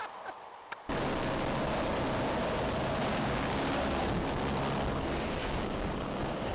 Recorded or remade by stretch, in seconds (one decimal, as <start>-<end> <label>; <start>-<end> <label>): 0.0-3.1 recorded; 3.1-4.2 remade; 4.2-5.4 recorded; 5.4-6.5 remade